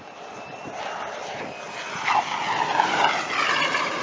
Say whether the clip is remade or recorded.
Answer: recorded